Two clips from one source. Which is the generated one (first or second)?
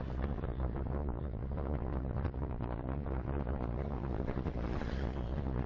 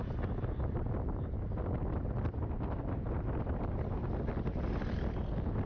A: first